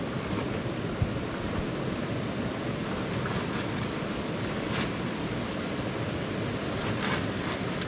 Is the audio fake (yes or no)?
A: no